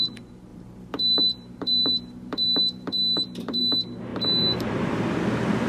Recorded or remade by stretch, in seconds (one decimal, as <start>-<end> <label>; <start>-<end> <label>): 0.0-0.5 recorded; 0.5-3.6 remade; 3.6-4.1 recorded; 4.1-5.0 remade; 5.0-5.7 recorded